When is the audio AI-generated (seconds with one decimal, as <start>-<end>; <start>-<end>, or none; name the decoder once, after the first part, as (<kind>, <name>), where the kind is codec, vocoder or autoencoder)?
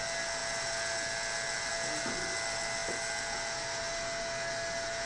none